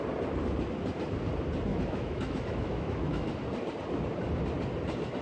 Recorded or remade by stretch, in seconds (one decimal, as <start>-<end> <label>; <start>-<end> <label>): 0.0-1.7 recorded; 1.7-3.3 remade; 3.3-5.2 recorded